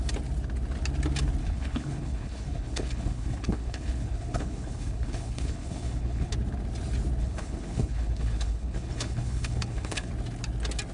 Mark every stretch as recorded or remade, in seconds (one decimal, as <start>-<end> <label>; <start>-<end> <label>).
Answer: 0.0-1.4 recorded; 1.4-6.3 remade; 6.3-7.2 recorded; 7.2-10.1 remade; 10.1-10.9 recorded